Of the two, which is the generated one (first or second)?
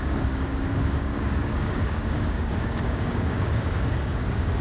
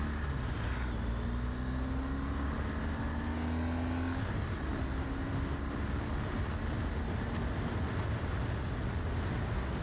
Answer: first